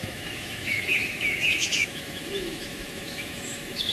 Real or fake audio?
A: fake